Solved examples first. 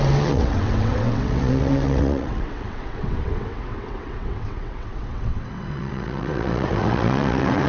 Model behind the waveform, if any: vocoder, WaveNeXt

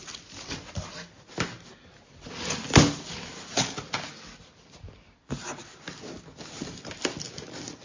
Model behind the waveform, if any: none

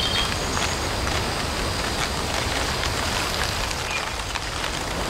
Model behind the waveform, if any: none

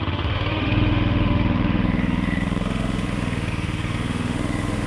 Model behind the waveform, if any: autoencoder, DAC-VAE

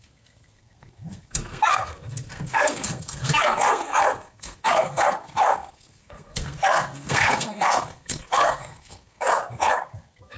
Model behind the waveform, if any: codec, SNAC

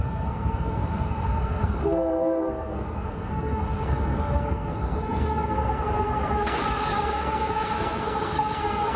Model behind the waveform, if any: codec, SNAC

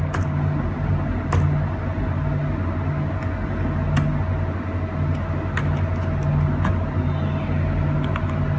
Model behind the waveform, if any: none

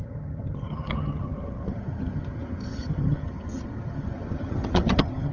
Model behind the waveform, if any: vocoder, HiFi-GAN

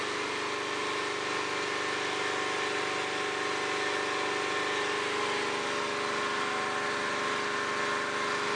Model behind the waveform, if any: none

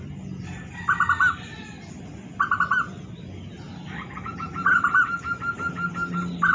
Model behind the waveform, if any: none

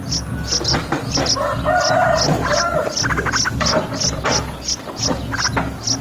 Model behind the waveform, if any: none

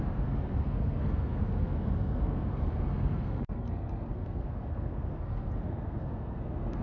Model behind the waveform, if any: codec, SNAC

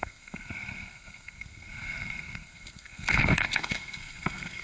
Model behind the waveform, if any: codec, SNAC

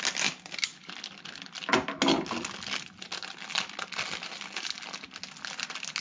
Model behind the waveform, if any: none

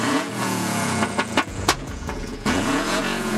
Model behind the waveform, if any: vocoder, Vocos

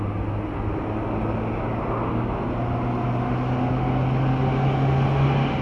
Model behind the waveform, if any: none